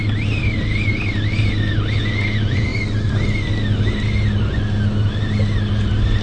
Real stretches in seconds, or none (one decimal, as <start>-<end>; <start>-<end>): 0.0-2.0; 2.7-6.2